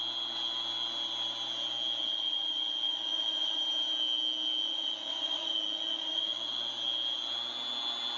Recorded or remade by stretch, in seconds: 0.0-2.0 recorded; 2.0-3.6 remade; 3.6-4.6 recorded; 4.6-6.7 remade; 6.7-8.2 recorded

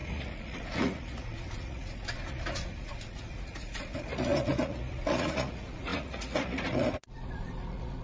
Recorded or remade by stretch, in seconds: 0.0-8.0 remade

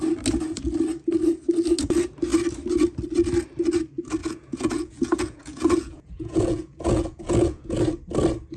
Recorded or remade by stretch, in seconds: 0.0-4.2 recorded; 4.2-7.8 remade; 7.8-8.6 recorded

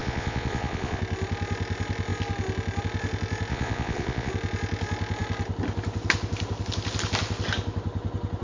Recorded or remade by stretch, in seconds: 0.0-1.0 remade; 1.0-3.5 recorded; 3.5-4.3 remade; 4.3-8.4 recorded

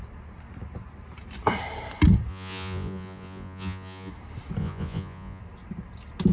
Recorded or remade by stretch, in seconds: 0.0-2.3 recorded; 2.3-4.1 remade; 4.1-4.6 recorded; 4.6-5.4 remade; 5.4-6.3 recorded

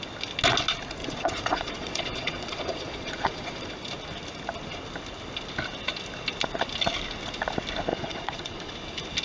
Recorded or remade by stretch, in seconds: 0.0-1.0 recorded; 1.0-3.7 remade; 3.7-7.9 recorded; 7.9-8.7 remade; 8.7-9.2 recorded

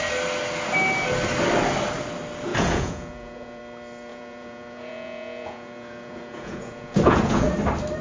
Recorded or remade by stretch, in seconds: 0.0-2.5 recorded; 2.5-3.6 remade; 3.6-4.1 recorded; 4.1-7.5 remade; 7.5-8.0 recorded

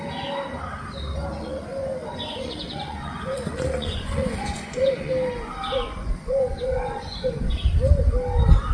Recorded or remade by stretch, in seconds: 0.0-1.4 recorded; 1.4-5.1 remade; 5.1-5.5 recorded; 5.5-7.5 remade; 7.5-8.7 recorded